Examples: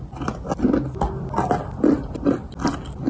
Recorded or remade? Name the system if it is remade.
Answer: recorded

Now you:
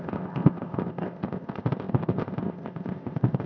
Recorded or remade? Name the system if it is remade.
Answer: remade, codec, ZipCodec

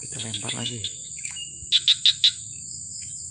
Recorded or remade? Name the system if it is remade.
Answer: remade, autoencoder, DAC-VAE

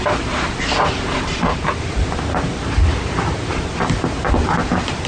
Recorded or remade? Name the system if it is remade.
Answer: recorded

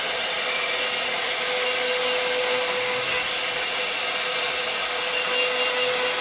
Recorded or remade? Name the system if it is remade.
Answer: recorded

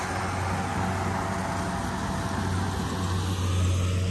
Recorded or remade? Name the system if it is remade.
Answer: recorded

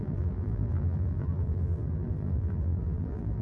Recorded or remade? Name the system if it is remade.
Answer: remade, vocoder, BigVGAN v2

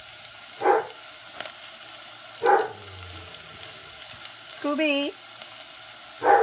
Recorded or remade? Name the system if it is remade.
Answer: recorded